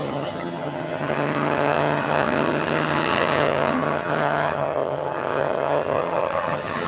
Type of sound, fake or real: fake